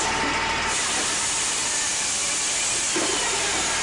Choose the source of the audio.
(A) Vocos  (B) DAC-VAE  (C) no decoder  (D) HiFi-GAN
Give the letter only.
C